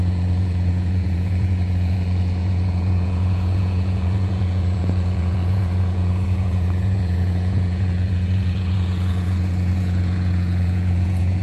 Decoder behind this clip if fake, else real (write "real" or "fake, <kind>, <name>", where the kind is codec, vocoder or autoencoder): fake, vocoder, Vocos